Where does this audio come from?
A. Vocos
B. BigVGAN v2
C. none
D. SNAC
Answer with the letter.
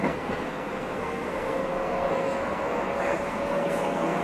D